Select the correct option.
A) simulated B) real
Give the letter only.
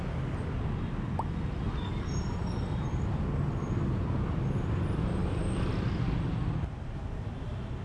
B